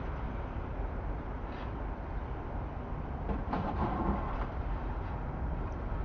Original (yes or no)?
yes